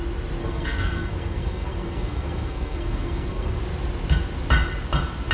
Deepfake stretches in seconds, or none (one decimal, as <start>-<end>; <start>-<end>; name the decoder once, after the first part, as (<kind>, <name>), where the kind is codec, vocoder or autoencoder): 0.4-3.6 (codec, SNAC)